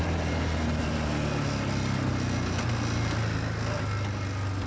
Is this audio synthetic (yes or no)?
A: no